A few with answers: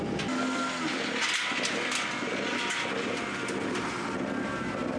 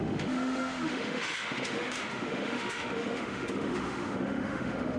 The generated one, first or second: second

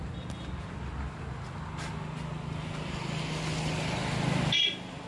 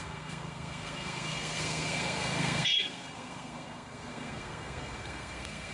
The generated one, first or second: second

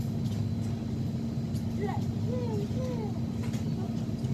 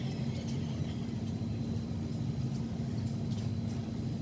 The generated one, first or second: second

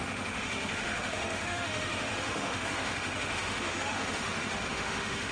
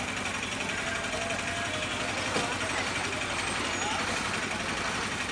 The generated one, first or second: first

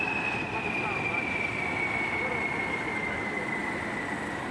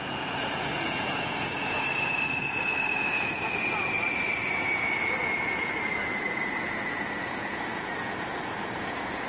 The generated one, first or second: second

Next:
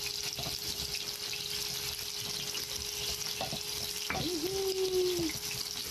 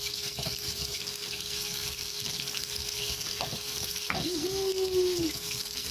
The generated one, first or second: second